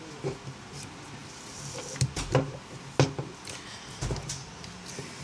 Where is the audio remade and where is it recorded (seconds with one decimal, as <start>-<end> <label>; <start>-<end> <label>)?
0.0-5.2 recorded